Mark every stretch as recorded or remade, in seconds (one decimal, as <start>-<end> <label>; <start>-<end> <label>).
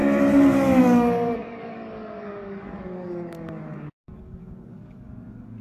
0.0-0.8 recorded; 0.8-5.6 remade